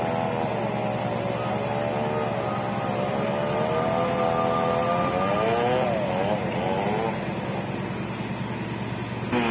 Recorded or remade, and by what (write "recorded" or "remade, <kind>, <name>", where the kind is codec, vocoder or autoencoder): recorded